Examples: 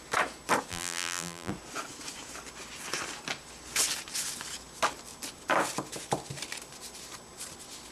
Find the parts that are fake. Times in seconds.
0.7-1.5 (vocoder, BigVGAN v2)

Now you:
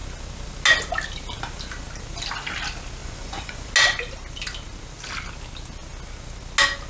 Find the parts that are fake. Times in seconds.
3.0-3.7 (vocoder, Vocos)

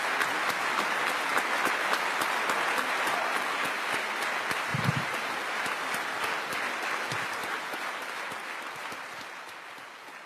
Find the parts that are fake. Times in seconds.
4.7-5.4 (vocoder, BigVGAN v2)

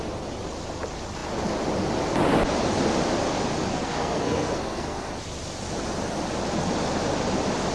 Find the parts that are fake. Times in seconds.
3.7-5.1 (codec, SNAC)